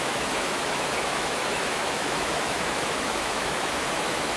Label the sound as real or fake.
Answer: fake